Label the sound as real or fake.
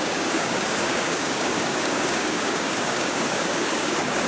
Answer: fake